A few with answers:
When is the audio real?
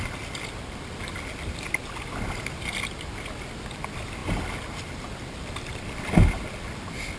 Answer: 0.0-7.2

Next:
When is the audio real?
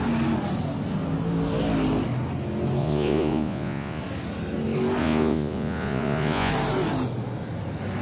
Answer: 0.0-2.8; 4.0-5.0; 6.5-8.0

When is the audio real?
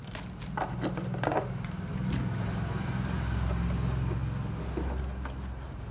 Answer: 0.0-5.9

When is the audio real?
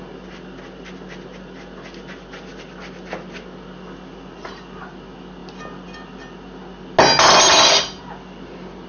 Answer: 0.0-8.9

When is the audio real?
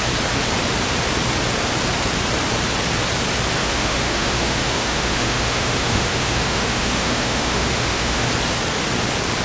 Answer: 0.0-3.6; 8.3-9.4